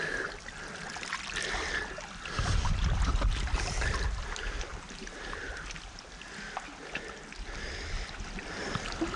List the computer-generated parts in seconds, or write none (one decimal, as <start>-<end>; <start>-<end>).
4.7-5.6